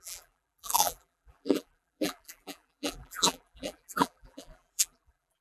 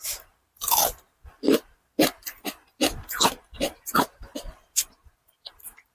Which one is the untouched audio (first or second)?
second